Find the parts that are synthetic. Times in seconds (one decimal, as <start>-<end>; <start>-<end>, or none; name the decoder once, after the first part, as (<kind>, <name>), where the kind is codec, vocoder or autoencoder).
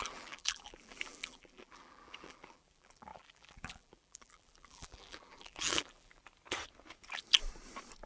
0.0-6.2 (vocoder, BigVGAN v2)